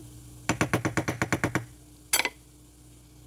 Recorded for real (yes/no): yes